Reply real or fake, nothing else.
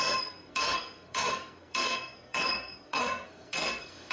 fake